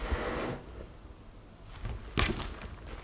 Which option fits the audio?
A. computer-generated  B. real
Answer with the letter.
B